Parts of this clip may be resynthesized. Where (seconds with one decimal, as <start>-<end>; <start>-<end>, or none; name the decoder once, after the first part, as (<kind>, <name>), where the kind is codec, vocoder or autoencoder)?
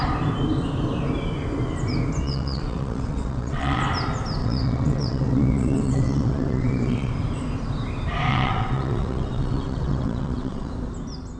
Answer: 2.2-3.8 (vocoder, WaveNeXt); 4.4-7.1; 8.3-10.7